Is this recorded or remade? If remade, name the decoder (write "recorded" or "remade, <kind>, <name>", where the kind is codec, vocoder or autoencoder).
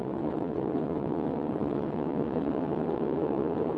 remade, vocoder, WaveNeXt